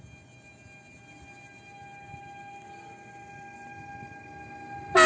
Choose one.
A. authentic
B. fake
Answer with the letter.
A